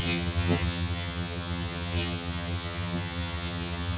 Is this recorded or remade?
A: remade